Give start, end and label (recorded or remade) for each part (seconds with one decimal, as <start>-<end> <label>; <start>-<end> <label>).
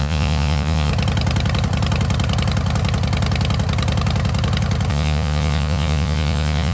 0.0-0.9 remade; 0.9-4.9 recorded; 4.9-6.7 remade